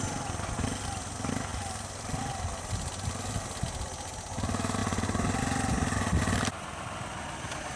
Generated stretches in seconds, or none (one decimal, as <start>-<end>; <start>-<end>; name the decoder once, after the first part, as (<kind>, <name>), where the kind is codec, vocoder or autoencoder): none